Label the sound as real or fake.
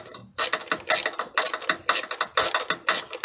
real